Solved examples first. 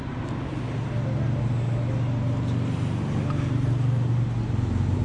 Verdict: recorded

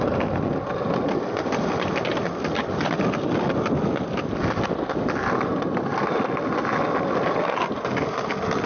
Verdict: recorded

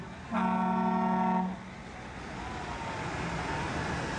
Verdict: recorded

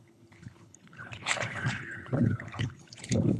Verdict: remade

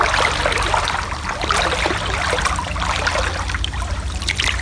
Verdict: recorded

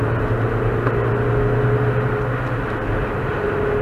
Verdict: recorded